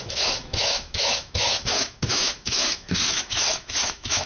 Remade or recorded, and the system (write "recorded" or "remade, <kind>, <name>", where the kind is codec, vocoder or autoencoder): remade, autoencoder, DAC-VAE